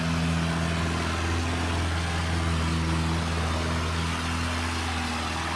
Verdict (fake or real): real